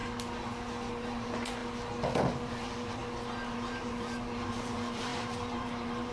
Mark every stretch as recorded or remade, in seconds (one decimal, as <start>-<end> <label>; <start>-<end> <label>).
0.0-0.9 recorded; 0.9-1.6 remade; 1.6-2.3 recorded; 2.3-3.0 remade; 3.0-3.5 recorded; 3.5-6.1 remade